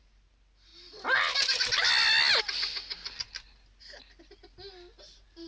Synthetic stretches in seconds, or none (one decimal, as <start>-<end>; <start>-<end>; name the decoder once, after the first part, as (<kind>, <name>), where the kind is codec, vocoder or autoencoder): none